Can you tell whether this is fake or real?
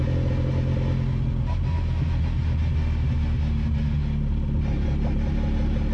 real